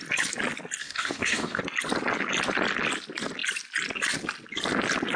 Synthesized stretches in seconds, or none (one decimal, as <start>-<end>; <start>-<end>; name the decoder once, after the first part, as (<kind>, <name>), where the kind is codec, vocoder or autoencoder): 0.8-1.6 (codec, DAC)